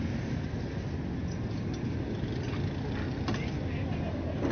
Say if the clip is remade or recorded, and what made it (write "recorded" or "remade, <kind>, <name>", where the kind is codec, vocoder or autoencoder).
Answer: recorded